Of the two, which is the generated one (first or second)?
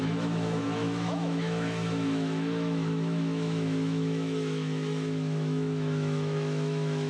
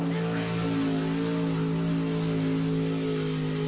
first